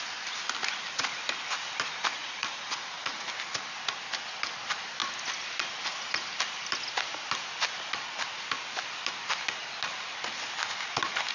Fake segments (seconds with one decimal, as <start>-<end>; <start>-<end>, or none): 2.2-3.3